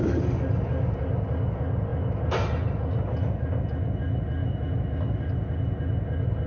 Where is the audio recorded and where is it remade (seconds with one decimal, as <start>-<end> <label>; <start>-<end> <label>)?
0.0-4.4 recorded; 4.4-5.2 remade; 5.2-6.5 recorded